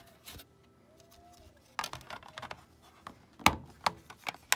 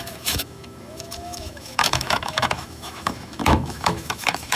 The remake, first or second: second